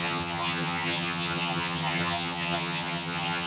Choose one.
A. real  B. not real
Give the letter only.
B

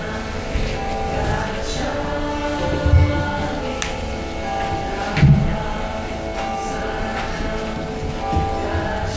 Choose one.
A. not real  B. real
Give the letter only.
B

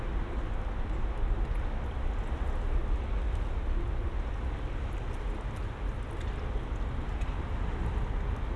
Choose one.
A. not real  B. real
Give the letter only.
B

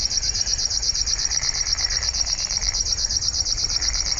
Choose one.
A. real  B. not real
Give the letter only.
B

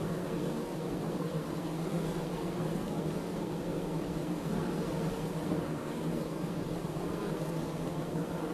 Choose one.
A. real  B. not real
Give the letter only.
B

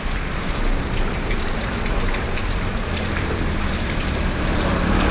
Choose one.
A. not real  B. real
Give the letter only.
A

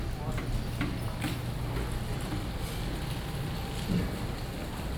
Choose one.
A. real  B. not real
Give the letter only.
A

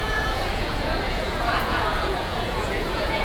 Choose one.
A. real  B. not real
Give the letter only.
B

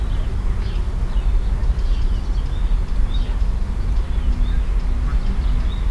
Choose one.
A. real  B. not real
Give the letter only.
A